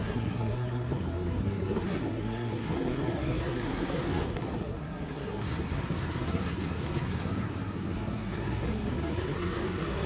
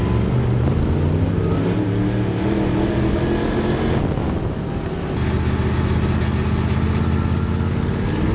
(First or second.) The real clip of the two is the second